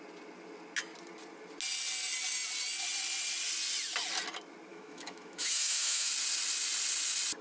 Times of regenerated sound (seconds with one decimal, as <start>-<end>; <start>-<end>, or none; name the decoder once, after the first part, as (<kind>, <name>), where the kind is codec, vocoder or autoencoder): 4.7-6.1 (autoencoder, DAC-VAE)